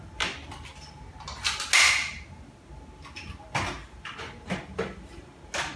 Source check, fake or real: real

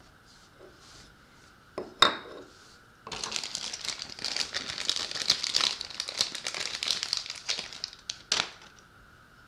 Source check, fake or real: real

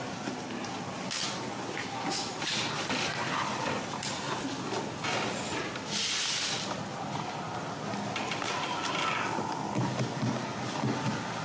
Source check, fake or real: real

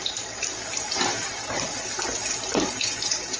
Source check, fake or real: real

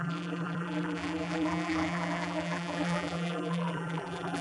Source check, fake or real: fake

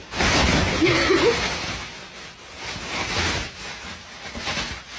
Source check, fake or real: real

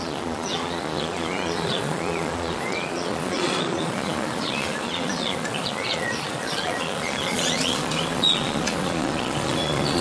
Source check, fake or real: fake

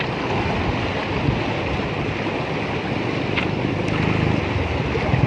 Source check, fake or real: real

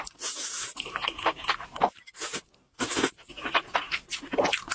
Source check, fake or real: real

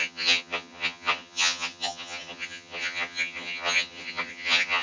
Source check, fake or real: fake